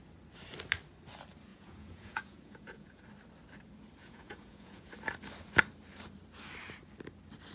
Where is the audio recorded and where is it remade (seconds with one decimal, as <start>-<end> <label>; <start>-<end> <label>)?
0.0-1.5 recorded; 1.5-3.0 remade; 3.0-4.0 recorded; 4.0-4.9 remade; 4.9-7.5 recorded